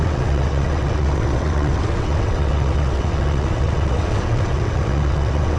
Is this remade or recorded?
remade